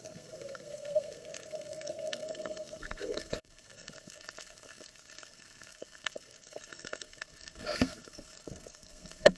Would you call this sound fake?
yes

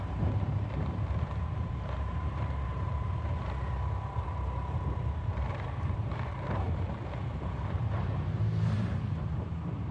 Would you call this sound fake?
yes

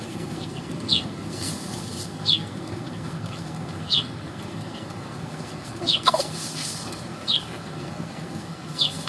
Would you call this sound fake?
yes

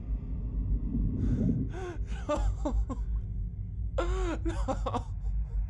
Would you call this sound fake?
no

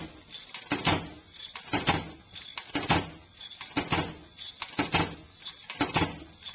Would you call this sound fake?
no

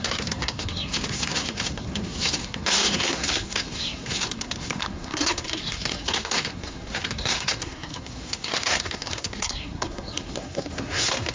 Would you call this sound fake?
yes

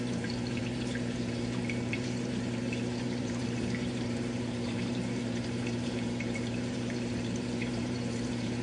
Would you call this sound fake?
yes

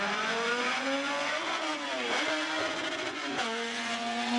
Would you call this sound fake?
yes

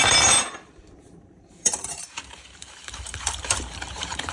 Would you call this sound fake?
yes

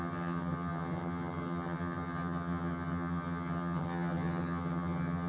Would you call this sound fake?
yes